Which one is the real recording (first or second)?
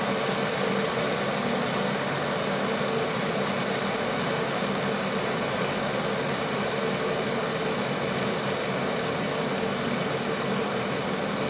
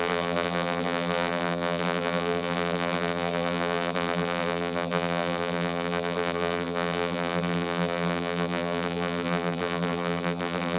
first